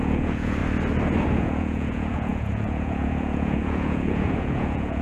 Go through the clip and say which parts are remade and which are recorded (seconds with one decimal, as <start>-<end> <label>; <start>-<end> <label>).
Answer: 0.0-0.6 remade; 0.6-1.2 recorded; 1.2-5.0 remade